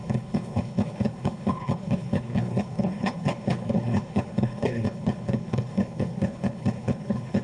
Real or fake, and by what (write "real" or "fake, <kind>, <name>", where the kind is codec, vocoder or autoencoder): fake, codec, HILCodec